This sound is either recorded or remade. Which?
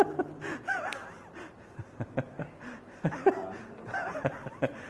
recorded